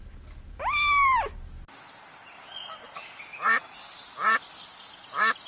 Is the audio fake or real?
real